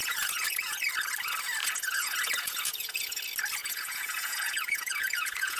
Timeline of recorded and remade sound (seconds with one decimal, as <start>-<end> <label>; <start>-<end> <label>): 0.0-0.8 remade; 0.8-1.6 recorded; 1.6-3.2 remade; 3.2-3.6 recorded; 3.6-5.6 remade